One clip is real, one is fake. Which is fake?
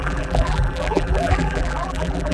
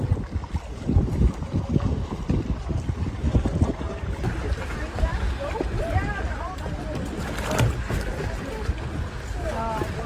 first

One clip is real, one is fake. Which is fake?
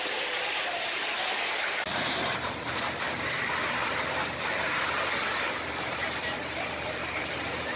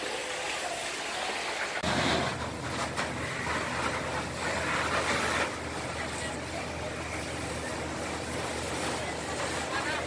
first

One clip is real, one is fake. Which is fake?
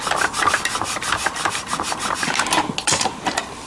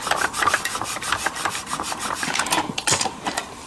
second